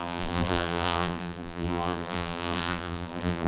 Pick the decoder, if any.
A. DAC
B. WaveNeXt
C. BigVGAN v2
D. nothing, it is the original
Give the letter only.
C